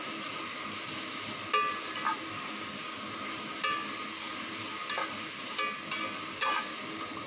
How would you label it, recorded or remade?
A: recorded